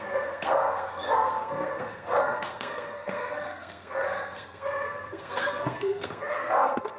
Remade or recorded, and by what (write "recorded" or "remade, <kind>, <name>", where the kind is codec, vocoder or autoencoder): remade, codec, SNAC